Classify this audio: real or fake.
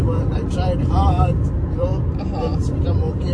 fake